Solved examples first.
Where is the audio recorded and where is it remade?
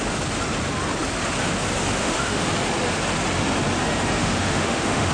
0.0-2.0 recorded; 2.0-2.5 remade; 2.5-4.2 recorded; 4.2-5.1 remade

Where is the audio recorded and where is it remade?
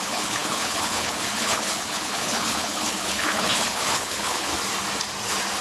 0.0-4.5 remade; 4.5-5.6 recorded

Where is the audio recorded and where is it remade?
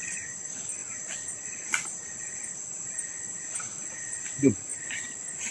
0.0-5.5 recorded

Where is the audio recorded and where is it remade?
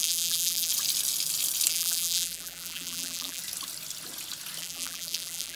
0.0-0.7 remade; 0.7-1.7 recorded; 1.7-3.4 remade; 3.4-4.6 recorded; 4.6-5.6 remade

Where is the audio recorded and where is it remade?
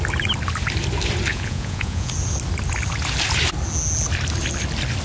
0.0-1.3 recorded; 1.3-2.1 remade; 2.1-5.0 recorded